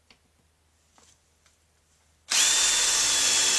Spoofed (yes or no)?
no